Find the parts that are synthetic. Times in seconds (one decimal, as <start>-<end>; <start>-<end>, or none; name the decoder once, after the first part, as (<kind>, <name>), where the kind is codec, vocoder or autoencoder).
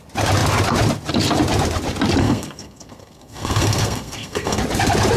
2.2-4.6 (codec, SNAC)